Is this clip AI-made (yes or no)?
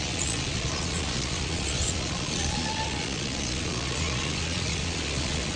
yes